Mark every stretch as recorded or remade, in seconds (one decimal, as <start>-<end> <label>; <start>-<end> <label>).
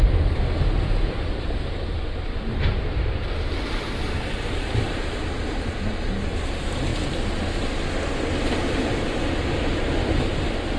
0.0-10.8 recorded